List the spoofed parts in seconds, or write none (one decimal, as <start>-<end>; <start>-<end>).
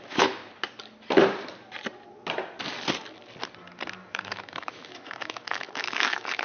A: 0.0-0.4; 4.1-6.4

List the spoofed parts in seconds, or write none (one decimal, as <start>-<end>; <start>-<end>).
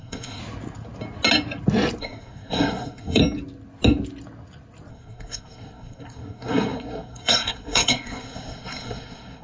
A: 0.0-0.4; 2.0-3.2; 4.9-9.4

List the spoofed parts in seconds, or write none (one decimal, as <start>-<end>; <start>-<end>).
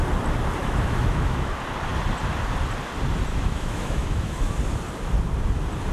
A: 0.6-1.5; 3.3-4.5